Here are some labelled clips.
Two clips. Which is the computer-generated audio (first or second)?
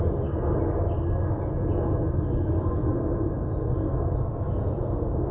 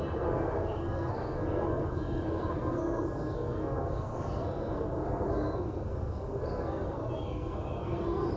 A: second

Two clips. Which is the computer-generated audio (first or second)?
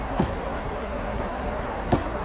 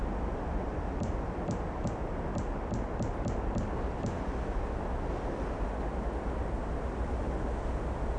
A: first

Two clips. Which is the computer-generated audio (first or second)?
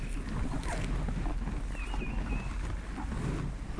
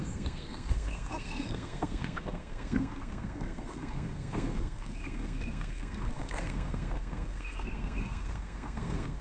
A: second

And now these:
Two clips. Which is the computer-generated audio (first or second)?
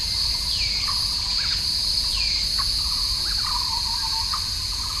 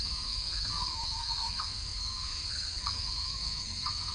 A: second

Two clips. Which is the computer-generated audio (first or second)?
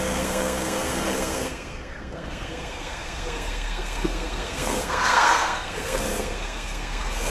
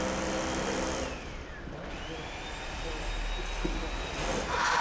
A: first